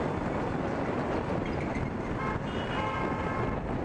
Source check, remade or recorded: recorded